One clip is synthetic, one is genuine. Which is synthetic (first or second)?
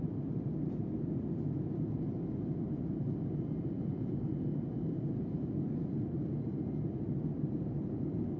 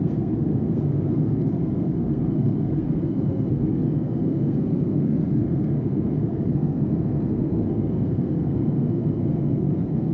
second